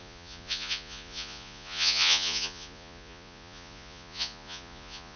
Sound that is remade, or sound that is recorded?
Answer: remade